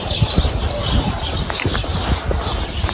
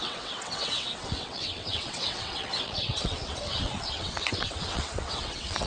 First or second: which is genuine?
first